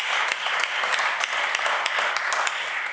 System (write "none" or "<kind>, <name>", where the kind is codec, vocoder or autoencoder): vocoder, BigVGAN v2